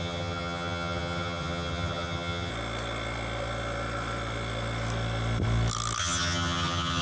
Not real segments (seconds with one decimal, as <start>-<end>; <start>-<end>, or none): 0.0-2.5; 6.0-7.0